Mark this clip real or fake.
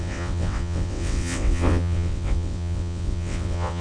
fake